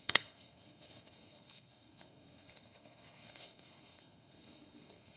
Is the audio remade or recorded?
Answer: remade